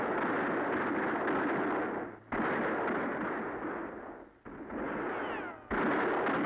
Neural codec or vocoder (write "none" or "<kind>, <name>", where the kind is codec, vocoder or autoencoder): none